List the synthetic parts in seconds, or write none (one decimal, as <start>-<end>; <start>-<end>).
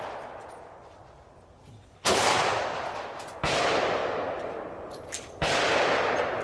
1.7-2.4